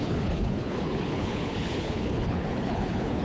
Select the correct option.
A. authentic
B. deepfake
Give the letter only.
B